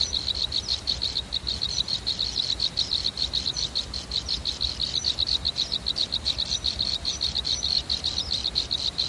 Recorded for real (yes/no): yes